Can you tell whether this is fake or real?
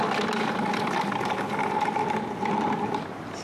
real